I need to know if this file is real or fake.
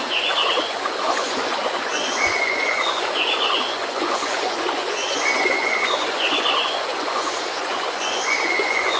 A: fake